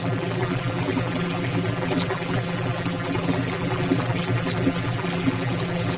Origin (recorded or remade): remade